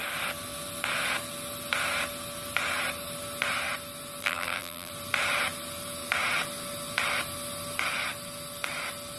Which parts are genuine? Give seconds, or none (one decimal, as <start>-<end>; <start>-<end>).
0.0-4.2; 4.9-9.2

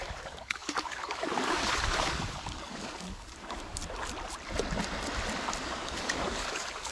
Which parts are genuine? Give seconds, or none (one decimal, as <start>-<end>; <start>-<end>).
3.8-5.6

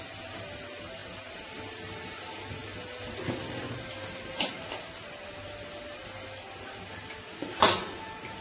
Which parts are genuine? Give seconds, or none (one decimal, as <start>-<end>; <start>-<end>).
0.0-8.4